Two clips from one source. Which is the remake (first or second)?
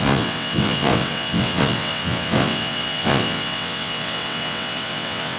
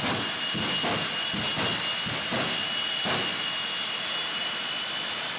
first